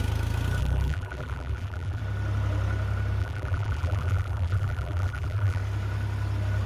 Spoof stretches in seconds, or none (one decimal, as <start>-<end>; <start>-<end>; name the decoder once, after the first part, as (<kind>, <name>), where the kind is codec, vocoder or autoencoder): 0.6-2.0 (vocoder, BigVGAN v2); 3.2-5.6